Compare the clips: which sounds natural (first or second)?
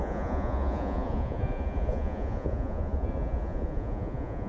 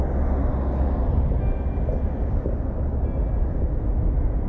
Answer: second